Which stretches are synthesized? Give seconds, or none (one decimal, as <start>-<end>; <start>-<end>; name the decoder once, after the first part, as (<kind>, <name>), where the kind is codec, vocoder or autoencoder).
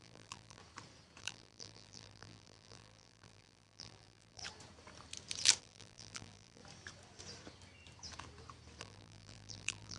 0.0-0.6 (vocoder, BigVGAN v2); 1.2-4.4; 5.6-6.6; 8.8-10.0